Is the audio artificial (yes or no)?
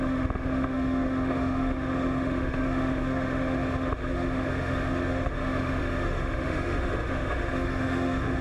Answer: yes